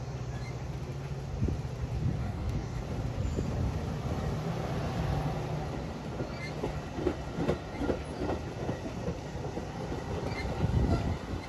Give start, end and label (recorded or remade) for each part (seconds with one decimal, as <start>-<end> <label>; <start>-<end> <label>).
0.0-2.2 recorded; 2.2-2.8 remade; 2.8-11.5 recorded